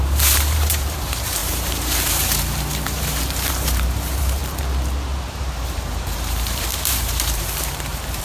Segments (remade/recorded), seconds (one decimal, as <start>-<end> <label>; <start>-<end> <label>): 0.0-4.4 remade; 4.4-5.3 recorded; 5.3-8.2 remade